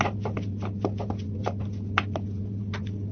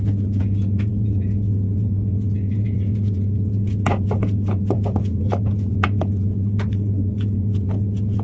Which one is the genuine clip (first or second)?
first